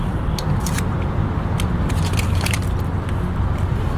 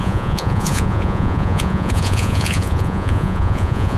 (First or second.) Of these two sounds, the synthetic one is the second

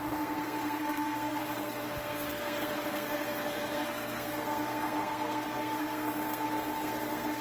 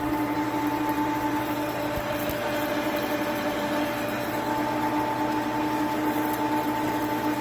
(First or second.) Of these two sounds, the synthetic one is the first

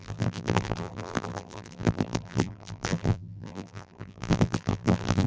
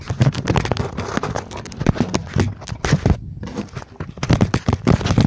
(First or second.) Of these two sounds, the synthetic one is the first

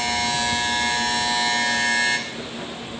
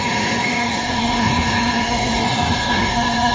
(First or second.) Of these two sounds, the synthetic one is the second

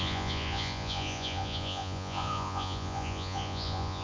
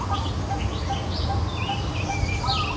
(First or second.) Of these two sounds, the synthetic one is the first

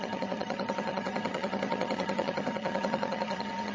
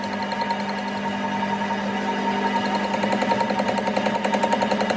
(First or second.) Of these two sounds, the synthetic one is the first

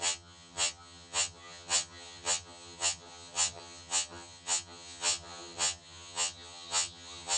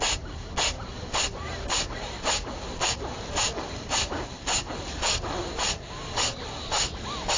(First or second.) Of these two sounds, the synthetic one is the first